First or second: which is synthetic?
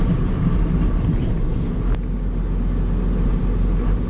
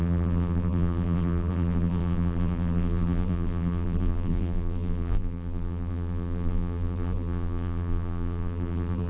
second